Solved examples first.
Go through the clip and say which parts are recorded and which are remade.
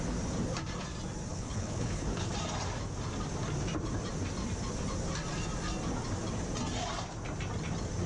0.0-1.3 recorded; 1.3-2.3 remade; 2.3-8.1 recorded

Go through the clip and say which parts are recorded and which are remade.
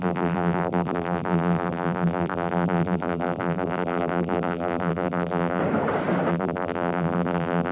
0.0-5.6 remade; 5.6-6.3 recorded; 6.3-7.7 remade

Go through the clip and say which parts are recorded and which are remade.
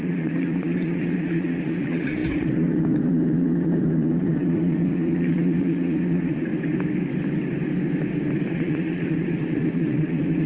0.0-6.5 remade; 6.5-8.5 recorded; 8.5-10.5 remade